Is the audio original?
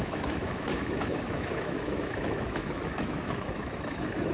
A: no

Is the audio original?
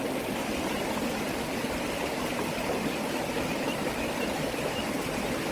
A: yes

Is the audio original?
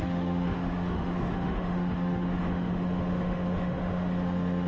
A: no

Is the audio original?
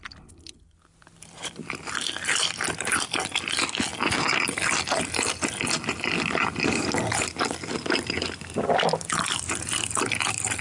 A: yes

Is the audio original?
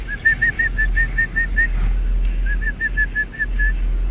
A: yes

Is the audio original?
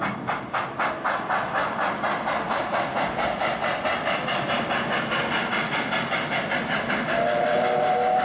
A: yes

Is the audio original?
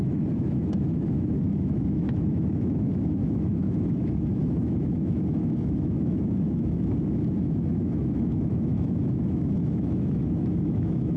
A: no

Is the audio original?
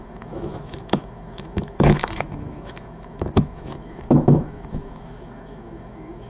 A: no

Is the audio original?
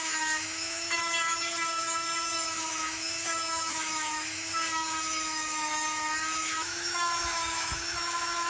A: no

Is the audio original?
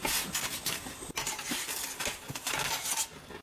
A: yes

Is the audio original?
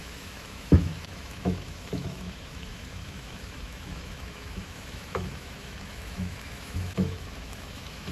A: no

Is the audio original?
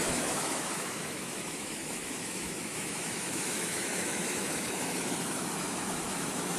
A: no